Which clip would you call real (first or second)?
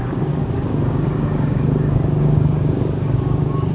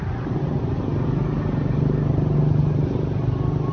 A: second